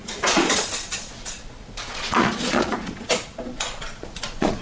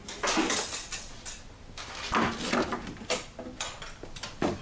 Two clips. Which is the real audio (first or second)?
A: second